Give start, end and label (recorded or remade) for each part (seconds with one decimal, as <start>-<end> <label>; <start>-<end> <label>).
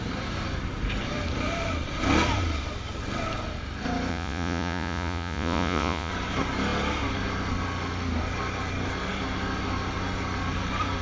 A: 0.0-4.1 recorded; 4.1-6.1 remade; 6.1-11.0 recorded